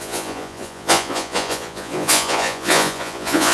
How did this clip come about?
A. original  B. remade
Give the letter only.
B